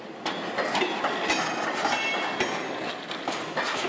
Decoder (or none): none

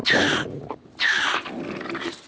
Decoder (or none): vocoder, BigVGAN v2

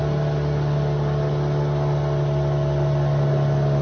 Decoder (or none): none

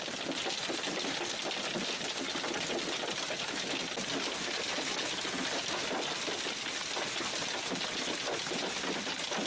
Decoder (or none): none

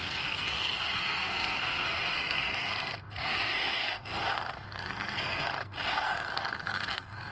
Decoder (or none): codec, SNAC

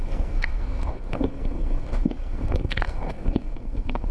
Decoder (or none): codec, SNAC